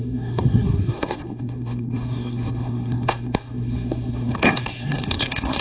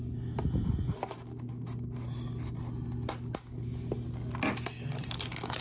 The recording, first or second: second